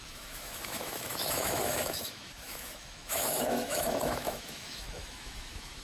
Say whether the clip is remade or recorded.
remade